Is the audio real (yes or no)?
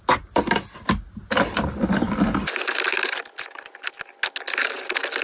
yes